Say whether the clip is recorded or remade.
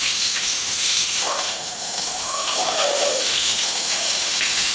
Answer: remade